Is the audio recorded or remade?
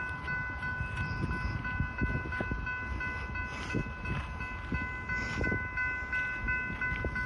recorded